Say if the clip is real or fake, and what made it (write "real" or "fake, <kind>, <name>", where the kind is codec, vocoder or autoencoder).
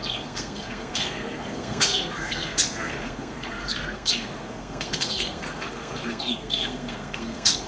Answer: fake, codec, SNAC